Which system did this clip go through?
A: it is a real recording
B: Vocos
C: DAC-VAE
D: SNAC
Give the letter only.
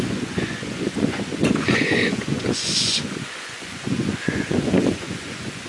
B